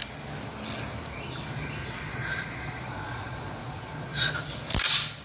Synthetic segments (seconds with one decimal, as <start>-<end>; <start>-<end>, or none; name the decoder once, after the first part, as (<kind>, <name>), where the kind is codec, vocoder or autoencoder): 1.8-4.3 (vocoder, Vocos)